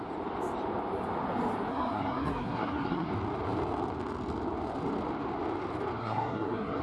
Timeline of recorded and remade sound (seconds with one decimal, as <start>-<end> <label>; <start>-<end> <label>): 0.0-1.7 recorded; 1.7-3.1 remade; 3.1-6.0 recorded; 6.0-6.8 remade